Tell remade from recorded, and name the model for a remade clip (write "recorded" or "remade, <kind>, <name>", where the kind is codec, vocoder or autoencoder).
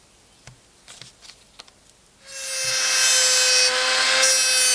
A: recorded